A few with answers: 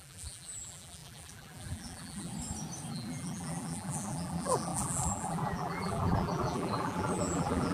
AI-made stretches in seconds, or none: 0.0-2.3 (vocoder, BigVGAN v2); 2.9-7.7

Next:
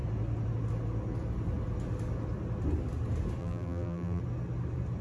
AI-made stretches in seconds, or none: 3.4-4.2 (vocoder, BigVGAN v2)

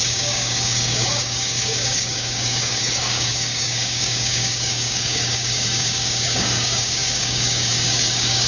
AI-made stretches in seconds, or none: 0.0-8.5 (codec, DAC)

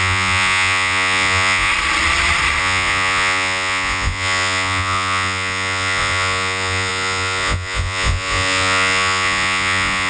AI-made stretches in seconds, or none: 0.0-1.7 (vocoder, Vocos); 2.6-10.1

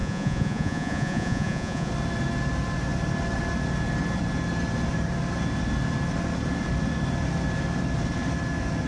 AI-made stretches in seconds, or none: 0.0-1.9 (vocoder, Vocos)

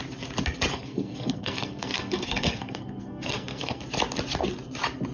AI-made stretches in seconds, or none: 0.7-3.8 (codec, SNAC)

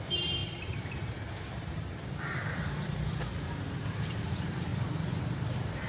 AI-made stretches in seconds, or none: 0.0-4.7 (vocoder, BigVGAN v2); 5.2-5.9